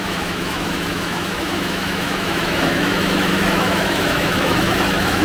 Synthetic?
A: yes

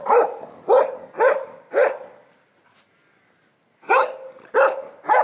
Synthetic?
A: no